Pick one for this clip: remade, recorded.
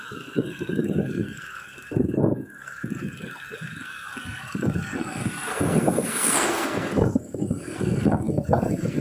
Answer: remade